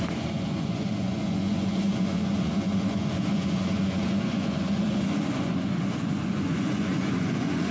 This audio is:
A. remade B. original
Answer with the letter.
A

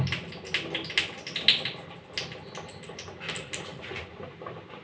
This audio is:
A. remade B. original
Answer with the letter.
B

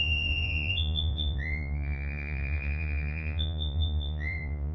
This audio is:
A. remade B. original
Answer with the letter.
A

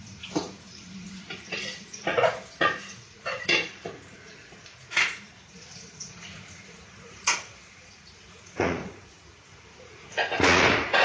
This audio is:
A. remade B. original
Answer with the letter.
A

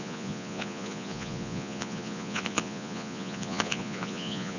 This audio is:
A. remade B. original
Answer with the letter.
A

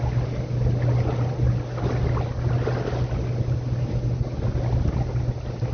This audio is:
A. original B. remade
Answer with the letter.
A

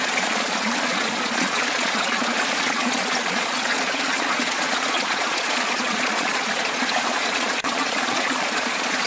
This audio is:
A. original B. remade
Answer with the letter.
B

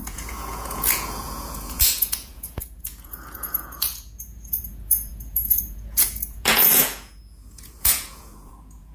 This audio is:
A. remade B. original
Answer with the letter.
A